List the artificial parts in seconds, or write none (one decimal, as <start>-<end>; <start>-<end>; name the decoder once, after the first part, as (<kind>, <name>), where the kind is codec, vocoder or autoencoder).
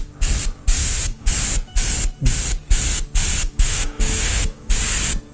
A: 0.8-1.3 (autoencoder, DAC-VAE); 3.4-4.7